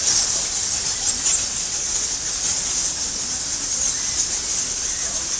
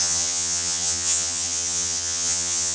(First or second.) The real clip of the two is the first